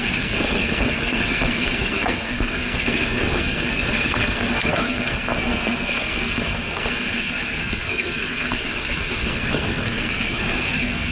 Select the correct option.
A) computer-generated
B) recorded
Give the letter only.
A